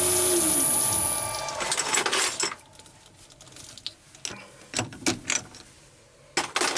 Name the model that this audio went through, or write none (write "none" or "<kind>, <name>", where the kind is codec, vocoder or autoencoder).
none